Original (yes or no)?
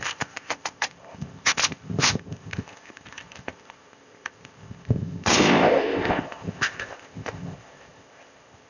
no